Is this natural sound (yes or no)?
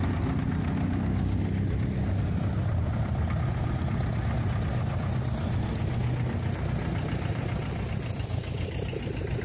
yes